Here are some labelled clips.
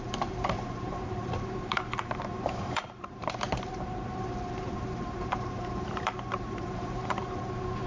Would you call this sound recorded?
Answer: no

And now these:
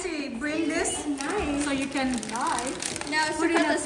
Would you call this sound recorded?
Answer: yes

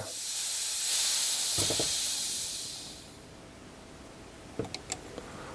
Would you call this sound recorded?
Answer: yes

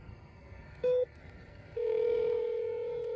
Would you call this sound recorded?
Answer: no